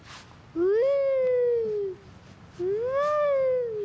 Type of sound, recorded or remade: recorded